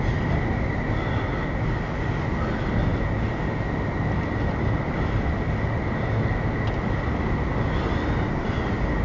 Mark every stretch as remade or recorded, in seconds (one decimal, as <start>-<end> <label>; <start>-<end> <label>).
0.0-9.0 recorded

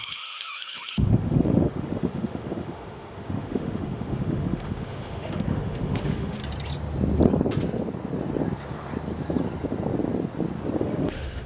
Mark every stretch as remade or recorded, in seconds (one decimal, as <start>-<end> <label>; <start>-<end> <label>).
0.0-6.4 remade; 6.4-10.8 recorded; 10.8-11.5 remade

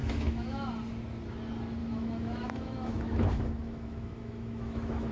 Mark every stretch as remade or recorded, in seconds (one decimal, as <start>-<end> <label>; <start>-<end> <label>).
0.0-0.7 remade; 0.7-1.8 recorded; 1.8-5.1 remade

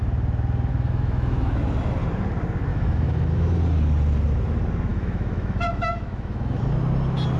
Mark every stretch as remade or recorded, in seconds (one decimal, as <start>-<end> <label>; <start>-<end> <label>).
0.0-0.7 recorded; 0.7-1.5 remade; 1.5-2.7 recorded; 2.7-3.6 remade; 3.6-4.9 recorded; 4.9-6.6 remade; 6.6-7.4 recorded

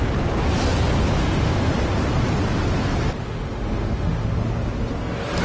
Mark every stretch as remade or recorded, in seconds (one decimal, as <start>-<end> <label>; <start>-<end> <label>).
0.0-1.2 recorded; 1.2-1.7 remade; 1.7-3.2 recorded; 3.2-4.4 remade; 4.4-5.4 recorded

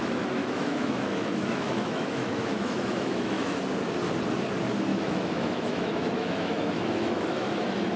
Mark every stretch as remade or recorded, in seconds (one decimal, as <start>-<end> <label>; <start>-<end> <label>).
0.0-0.4 recorded; 0.4-3.6 remade; 3.6-4.9 recorded; 4.9-7.6 remade; 7.6-8.0 recorded

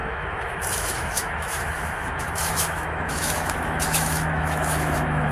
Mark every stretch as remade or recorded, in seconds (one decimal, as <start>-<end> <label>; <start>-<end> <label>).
0.0-5.3 remade

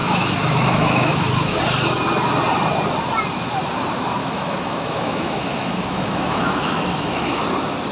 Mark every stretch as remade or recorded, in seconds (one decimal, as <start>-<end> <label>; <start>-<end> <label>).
0.0-1.6 remade; 1.6-4.2 recorded; 4.2-7.4 remade; 7.4-7.9 recorded